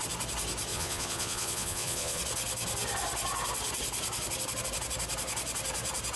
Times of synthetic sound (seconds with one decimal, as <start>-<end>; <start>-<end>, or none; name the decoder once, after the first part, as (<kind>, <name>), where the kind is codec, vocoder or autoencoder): 0.7-2.2 (vocoder, Vocos)